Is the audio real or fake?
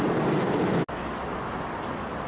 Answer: real